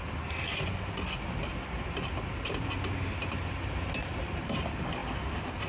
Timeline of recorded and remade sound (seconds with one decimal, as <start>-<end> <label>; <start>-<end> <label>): 0.0-5.7 recorded